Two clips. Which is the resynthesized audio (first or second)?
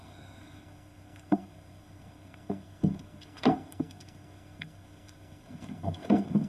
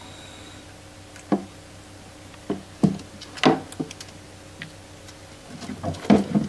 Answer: first